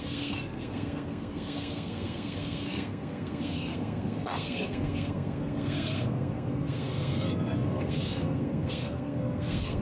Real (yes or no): no